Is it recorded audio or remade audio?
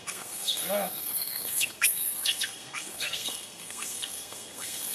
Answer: remade